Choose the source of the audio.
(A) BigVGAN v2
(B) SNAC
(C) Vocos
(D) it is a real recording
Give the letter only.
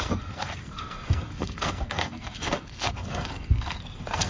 B